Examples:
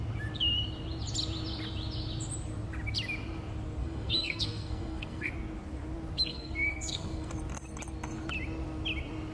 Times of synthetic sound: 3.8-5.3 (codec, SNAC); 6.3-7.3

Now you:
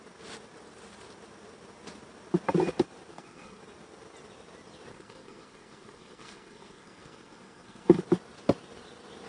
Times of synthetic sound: 3.1-3.6 (codec, SNAC); 4.9-8.0